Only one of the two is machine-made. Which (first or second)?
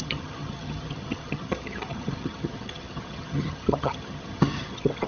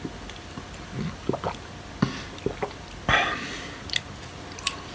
first